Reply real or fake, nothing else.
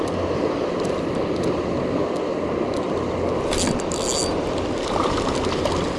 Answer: real